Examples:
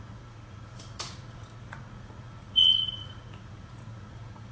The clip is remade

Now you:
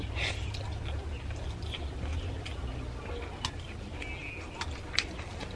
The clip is recorded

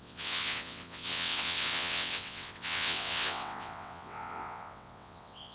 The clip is remade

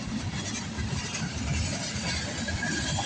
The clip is recorded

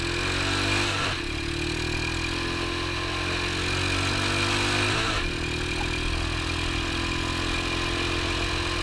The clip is recorded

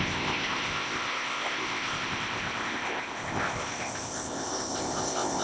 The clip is remade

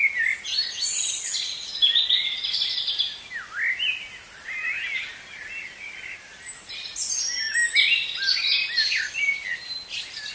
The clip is recorded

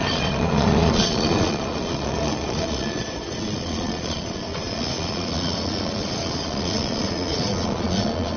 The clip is remade